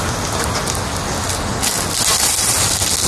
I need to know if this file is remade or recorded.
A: recorded